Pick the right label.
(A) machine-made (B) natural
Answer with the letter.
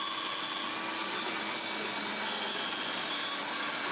B